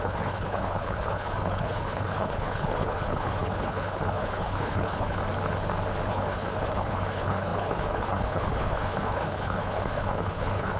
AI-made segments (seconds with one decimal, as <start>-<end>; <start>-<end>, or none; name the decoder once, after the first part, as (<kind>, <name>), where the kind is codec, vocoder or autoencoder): 0.0-5.2 (codec, HILCodec); 6.1-10.8